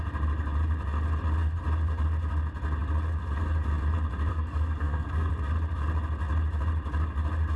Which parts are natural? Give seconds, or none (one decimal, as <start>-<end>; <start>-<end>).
0.0-4.3; 5.3-7.6